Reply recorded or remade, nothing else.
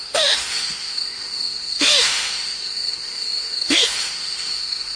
remade